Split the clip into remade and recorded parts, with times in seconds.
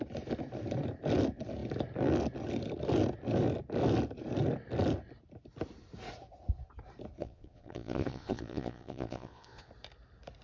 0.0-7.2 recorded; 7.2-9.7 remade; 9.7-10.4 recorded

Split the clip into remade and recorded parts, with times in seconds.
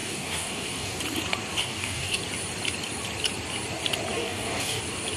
0.0-1.0 remade; 1.0-1.6 recorded; 1.6-2.2 remade; 2.2-4.2 recorded; 4.2-4.8 remade; 4.8-5.2 recorded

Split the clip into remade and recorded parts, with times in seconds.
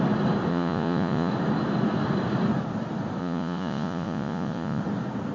0.0-0.5 recorded; 0.5-1.3 remade; 1.3-3.2 recorded; 3.2-4.8 remade; 4.8-5.3 recorded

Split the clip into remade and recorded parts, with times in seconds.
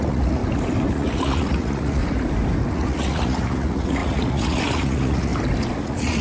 0.0-0.4 remade; 0.4-0.9 recorded; 0.9-2.0 remade; 2.0-2.7 recorded; 2.7-5.3 remade; 5.3-5.8 recorded; 5.8-6.2 remade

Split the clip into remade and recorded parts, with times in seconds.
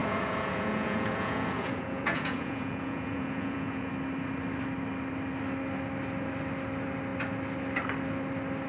0.0-3.9 remade; 3.9-8.7 recorded